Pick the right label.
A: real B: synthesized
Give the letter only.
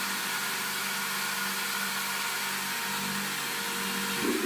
A